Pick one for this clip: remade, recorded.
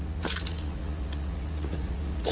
remade